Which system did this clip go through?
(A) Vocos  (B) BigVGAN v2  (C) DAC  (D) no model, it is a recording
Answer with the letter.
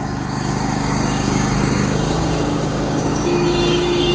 C